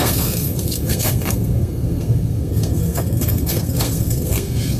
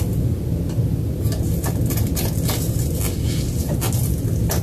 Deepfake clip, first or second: first